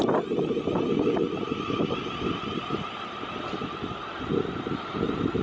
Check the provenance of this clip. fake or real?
real